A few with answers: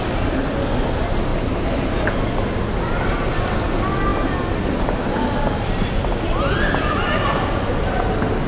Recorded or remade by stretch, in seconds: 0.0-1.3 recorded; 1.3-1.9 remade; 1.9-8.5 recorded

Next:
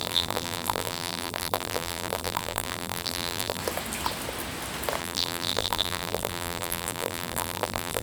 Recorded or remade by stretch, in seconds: 0.0-3.6 remade; 3.6-5.0 recorded; 5.0-8.0 remade

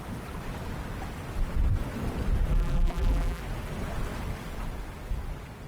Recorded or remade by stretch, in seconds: 0.0-2.5 recorded; 2.5-3.4 remade; 3.4-5.7 recorded

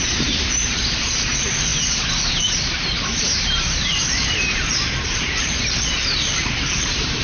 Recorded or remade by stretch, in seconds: 0.0-1.7 remade; 1.7-2.3 recorded; 2.3-7.2 remade

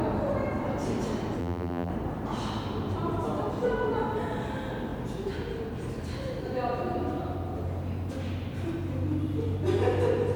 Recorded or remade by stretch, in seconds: 0.0-1.4 recorded; 1.4-1.9 remade; 1.9-10.4 recorded

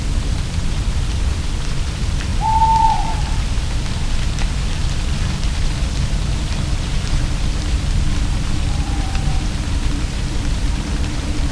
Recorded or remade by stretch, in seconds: 0.0-2.3 remade; 2.3-4.1 recorded; 4.1-11.5 remade

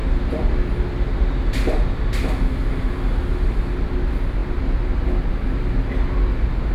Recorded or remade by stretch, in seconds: 0.0-0.5 remade; 0.5-6.7 recorded